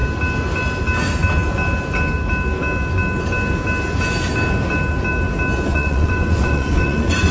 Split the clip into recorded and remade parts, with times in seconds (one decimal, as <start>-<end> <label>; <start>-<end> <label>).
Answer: 0.0-5.7 recorded; 5.7-7.3 remade